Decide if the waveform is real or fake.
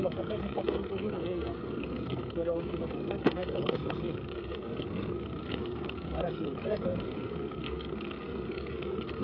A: fake